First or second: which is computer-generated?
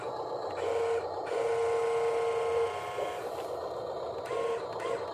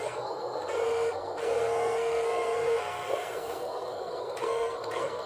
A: second